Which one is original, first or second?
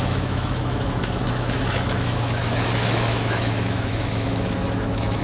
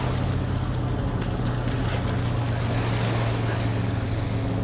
second